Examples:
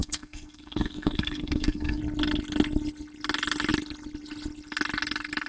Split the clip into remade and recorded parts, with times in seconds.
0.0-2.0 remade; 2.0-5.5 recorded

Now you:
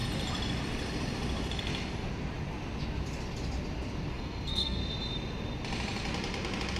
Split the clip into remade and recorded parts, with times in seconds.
0.0-4.1 recorded; 4.1-4.8 remade; 4.8-6.8 recorded

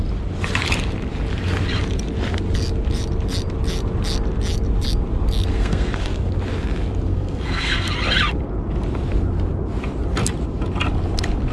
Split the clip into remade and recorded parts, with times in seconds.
0.0-5.5 recorded; 5.5-6.3 remade; 6.3-7.1 recorded; 7.1-7.9 remade; 7.9-11.5 recorded

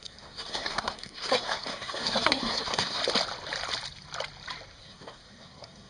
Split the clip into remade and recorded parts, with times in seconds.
0.0-3.0 remade; 3.0-4.8 recorded; 4.8-5.9 remade

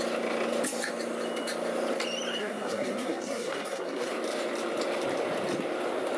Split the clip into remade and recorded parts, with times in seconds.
0.0-2.4 recorded; 2.4-4.1 remade; 4.1-6.2 recorded

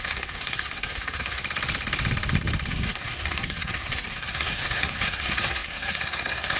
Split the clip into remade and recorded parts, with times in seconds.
0.0-1.4 remade; 1.4-2.7 recorded; 2.7-6.6 remade

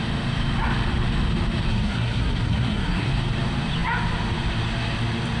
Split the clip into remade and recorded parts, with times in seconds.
0.0-1.7 recorded; 1.7-3.1 remade; 3.1-5.4 recorded

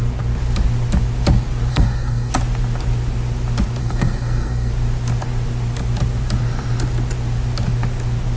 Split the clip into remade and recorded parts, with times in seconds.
0.0-1.7 recorded; 1.7-2.3 remade; 2.3-3.8 recorded; 3.8-4.7 remade; 4.7-8.4 recorded